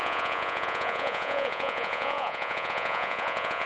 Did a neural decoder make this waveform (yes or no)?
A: yes